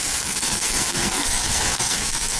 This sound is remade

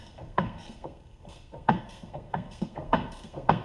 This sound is remade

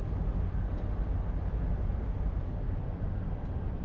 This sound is recorded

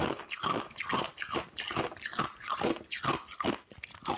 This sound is recorded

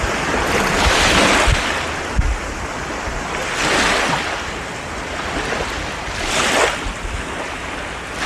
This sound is recorded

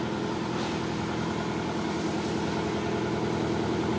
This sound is recorded